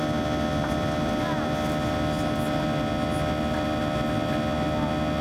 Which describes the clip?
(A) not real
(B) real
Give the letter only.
B